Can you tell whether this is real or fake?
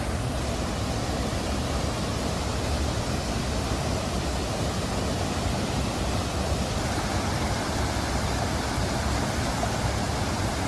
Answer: real